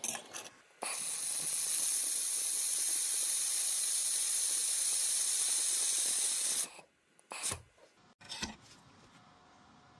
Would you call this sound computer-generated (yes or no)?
no